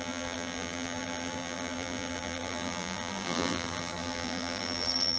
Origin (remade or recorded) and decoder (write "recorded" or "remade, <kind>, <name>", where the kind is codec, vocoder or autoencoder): remade, vocoder, BigVGAN v2